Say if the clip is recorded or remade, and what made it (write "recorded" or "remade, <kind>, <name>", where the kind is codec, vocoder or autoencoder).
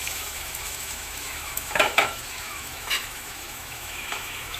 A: remade, autoencoder, DAC-VAE